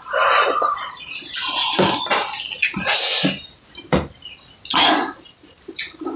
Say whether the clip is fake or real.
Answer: real